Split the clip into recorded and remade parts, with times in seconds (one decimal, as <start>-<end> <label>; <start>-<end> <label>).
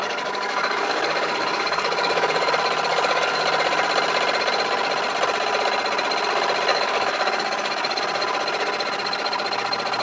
0.0-2.5 remade; 2.5-2.9 recorded; 2.9-3.4 remade; 3.4-6.7 recorded; 6.7-8.0 remade; 8.0-10.0 recorded